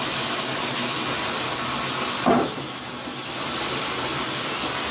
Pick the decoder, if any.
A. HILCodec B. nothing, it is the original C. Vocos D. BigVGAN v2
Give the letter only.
B